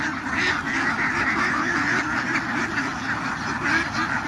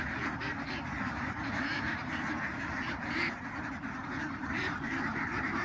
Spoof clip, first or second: second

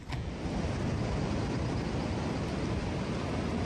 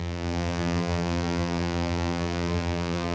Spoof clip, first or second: second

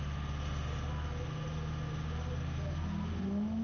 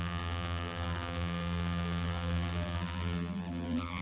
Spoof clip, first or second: second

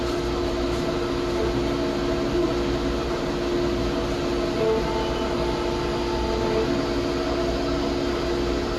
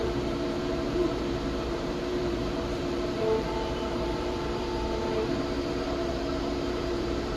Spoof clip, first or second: second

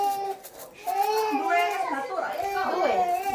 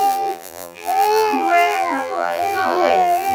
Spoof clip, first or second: second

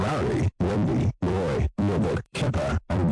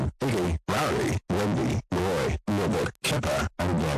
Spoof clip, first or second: first